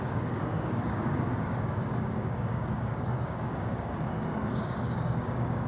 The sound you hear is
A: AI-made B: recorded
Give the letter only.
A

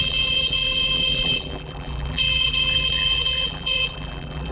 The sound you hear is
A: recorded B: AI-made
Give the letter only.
B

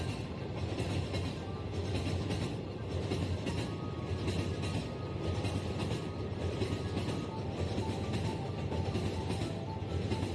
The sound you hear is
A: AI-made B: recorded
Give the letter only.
B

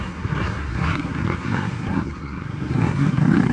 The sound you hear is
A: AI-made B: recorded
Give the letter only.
A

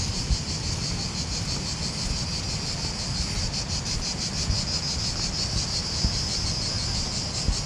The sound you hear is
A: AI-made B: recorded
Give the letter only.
B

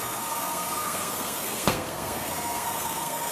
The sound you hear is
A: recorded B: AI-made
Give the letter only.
B